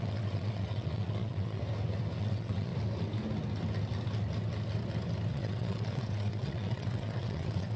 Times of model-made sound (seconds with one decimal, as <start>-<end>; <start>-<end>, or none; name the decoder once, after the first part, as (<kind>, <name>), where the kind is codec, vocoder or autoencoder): 0.0-1.6 (vocoder, WaveNeXt); 2.2-2.7; 5.3-7.8